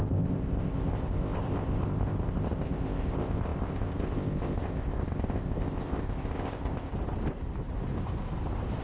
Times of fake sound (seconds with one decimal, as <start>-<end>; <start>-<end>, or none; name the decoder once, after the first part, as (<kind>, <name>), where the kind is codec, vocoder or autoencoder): 0.0-6.9 (codec, ZipCodec)